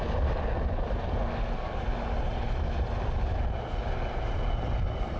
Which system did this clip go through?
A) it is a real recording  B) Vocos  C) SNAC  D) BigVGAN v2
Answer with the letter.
A